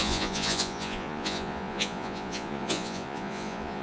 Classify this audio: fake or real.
fake